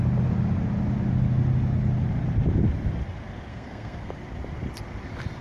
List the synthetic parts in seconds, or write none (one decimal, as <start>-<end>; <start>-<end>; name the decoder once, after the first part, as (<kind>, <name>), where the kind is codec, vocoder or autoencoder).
3.5-4.1 (codec, SNAC)